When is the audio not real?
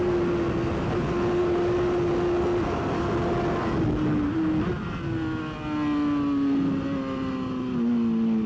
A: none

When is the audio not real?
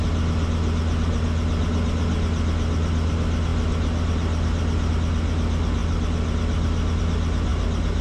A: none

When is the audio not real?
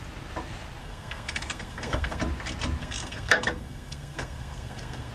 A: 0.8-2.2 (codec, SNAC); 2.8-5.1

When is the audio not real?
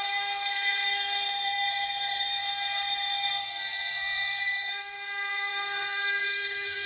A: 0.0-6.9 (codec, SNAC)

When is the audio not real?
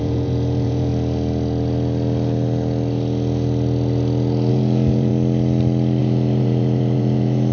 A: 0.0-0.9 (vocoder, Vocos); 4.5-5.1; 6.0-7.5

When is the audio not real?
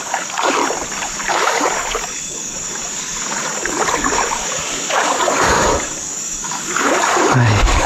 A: 0.0-0.6 (codec, DAC); 1.3-7.9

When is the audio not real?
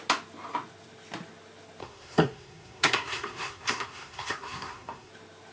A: 1.8-5.1 (codec, SNAC)